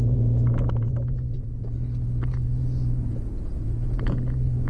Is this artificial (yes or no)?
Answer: yes